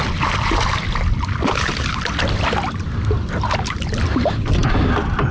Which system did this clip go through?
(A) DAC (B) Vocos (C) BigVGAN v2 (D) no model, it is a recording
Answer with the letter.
D